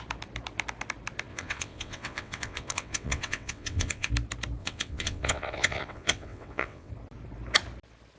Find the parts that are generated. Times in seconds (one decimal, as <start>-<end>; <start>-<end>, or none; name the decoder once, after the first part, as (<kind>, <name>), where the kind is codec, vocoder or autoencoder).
1.3-4.1 (vocoder, WaveNeXt); 4.6-6.9